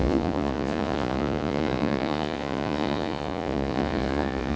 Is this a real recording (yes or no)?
no